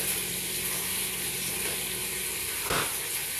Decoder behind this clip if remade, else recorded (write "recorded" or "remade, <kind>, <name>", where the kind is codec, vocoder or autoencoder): remade, vocoder, BigVGAN v2